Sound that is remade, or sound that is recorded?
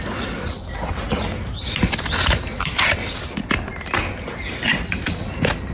recorded